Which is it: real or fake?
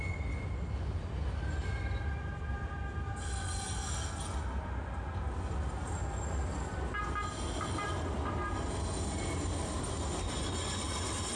real